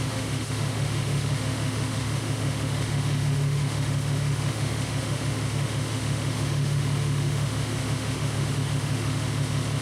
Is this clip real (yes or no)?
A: no